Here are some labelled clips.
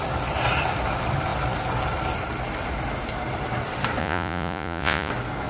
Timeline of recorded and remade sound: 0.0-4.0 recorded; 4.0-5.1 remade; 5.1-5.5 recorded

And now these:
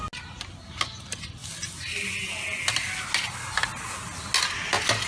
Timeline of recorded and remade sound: 0.0-5.1 recorded

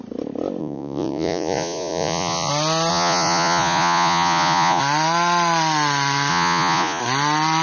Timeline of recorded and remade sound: 0.0-0.6 recorded; 0.6-2.5 remade; 2.5-2.9 recorded; 2.9-4.8 remade; 4.8-6.3 recorded; 6.3-7.0 remade; 7.0-7.6 recorded